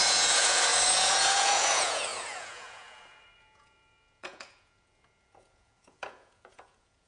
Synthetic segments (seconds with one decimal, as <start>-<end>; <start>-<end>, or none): 0.0-7.1